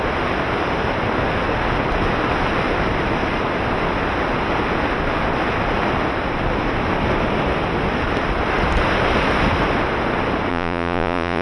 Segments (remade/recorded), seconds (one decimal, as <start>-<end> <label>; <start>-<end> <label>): 0.0-10.5 recorded; 10.5-11.4 remade